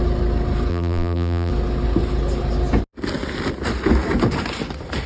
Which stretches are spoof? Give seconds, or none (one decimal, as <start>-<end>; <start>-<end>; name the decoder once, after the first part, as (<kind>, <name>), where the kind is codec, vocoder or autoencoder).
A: 0.7-1.5 (vocoder, BigVGAN v2)